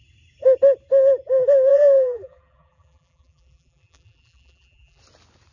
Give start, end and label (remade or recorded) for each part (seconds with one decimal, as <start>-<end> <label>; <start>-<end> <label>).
0.0-1.7 recorded; 1.7-5.0 remade; 5.0-5.5 recorded